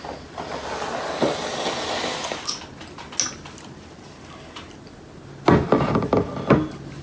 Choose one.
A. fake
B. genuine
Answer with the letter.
B